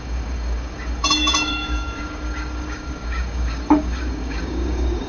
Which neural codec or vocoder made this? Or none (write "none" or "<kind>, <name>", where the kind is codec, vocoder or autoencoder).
codec, DAC